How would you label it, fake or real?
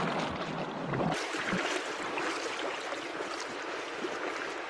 real